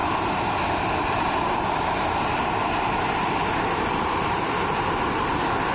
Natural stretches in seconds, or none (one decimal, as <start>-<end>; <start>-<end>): 0.0-5.7